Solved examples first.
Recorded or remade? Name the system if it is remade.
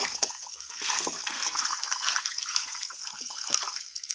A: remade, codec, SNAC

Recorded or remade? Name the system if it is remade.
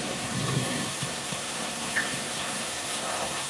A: remade, codec, SNAC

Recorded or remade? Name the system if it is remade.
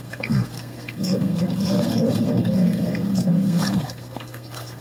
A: remade, codec, SNAC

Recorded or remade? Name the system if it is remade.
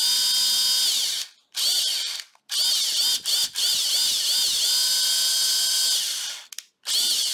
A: recorded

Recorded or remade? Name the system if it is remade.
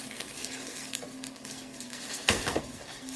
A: remade, codec, SNAC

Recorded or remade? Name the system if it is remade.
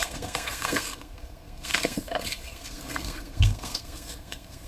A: remade, codec, SNAC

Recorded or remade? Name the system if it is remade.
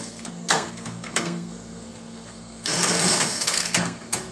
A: remade, codec, SNAC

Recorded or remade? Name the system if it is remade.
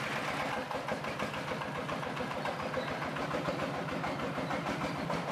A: recorded